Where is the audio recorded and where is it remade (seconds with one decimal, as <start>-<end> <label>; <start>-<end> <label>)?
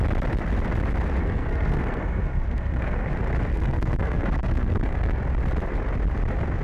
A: 0.0-1.2 recorded; 1.2-3.1 remade; 3.1-3.5 recorded; 3.5-5.2 remade; 5.2-6.6 recorded